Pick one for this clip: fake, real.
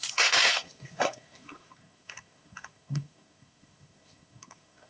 fake